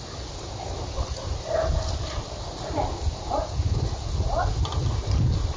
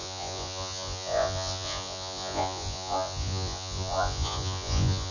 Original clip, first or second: first